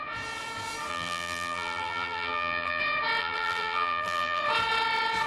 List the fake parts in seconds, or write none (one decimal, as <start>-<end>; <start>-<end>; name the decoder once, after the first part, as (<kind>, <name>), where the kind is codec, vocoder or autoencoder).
0.9-2.8 (vocoder, BigVGAN v2); 3.2-4.4